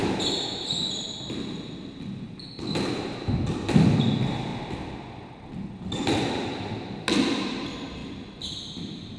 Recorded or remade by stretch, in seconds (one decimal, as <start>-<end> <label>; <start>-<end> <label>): 0.0-9.2 recorded